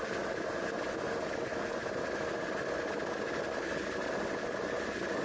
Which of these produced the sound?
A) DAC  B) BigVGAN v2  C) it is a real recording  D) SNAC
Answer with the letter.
C